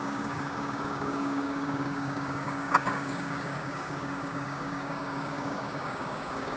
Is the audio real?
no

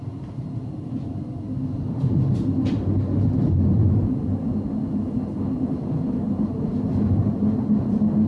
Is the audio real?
yes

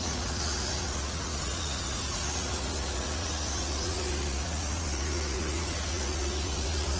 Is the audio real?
no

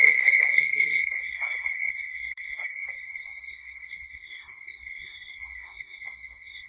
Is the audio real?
no